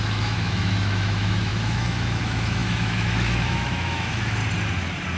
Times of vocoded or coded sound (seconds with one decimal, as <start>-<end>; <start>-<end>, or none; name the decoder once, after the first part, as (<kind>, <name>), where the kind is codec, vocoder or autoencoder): 0.0-4.4 (autoencoder, DAC-VAE)